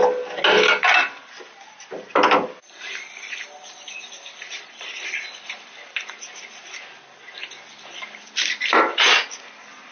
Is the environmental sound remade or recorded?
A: recorded